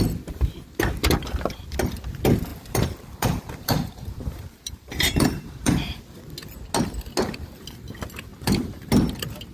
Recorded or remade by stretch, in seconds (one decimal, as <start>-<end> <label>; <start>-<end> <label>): 0.0-2.5 recorded; 2.5-6.0 remade; 6.0-8.3 recorded; 8.3-8.9 remade; 8.9-9.5 recorded